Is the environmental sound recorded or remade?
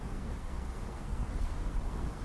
remade